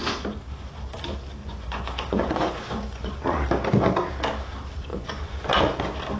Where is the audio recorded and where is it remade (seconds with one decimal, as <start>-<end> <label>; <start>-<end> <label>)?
0.0-1.4 recorded; 1.4-3.1 remade; 3.1-4.9 recorded; 4.9-5.8 remade; 5.8-6.2 recorded